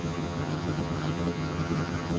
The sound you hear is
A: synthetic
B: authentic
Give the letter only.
A